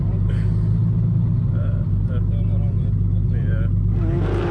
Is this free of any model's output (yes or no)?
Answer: yes